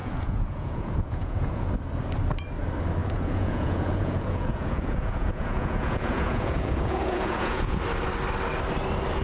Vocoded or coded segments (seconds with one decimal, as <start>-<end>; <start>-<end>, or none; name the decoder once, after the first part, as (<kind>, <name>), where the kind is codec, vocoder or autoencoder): 0.0-1.7 (vocoder, Vocos); 3.0-7.8